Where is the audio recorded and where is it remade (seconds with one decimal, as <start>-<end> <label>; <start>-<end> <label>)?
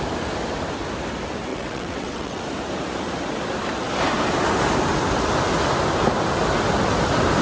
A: 0.0-1.5 recorded; 1.5-2.4 remade; 2.4-7.4 recorded